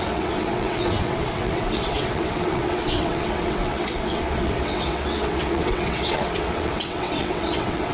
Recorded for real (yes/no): no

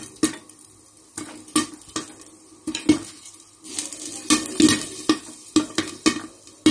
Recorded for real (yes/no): yes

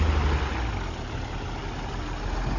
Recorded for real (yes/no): yes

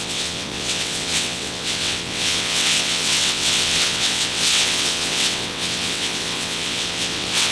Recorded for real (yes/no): no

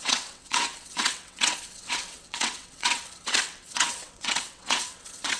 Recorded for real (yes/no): no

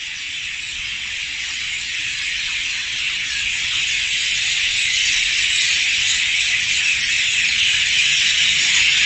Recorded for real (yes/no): no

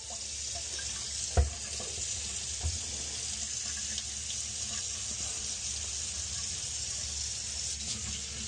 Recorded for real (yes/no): yes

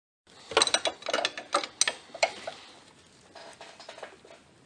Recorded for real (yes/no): yes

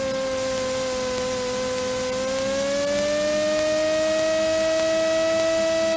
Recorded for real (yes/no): yes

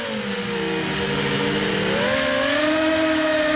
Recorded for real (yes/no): yes